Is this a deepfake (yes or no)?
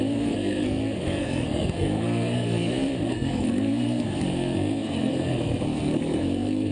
yes